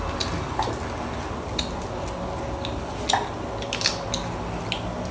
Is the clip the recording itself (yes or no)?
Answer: yes